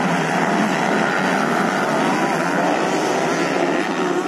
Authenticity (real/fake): real